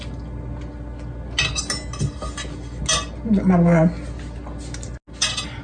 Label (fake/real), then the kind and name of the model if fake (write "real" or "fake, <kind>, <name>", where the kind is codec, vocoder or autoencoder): real